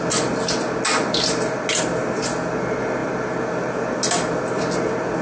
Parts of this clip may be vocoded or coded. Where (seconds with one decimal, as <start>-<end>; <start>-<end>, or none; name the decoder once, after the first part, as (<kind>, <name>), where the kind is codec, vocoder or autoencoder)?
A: none